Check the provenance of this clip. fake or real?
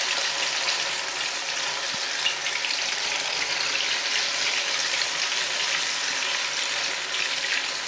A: real